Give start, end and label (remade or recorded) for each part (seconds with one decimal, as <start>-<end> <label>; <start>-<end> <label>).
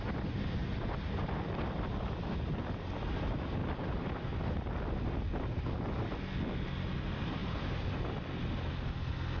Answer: 0.0-0.6 recorded; 0.6-2.4 remade; 2.4-3.6 recorded; 3.6-4.4 remade; 4.4-7.4 recorded; 7.4-8.7 remade; 8.7-9.4 recorded